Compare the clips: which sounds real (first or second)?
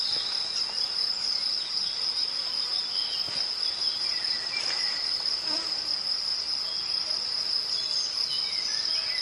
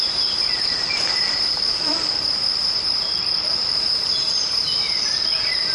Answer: first